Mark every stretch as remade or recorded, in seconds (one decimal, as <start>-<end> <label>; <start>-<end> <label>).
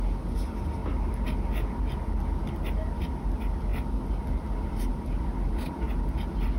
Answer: 0.0-6.6 recorded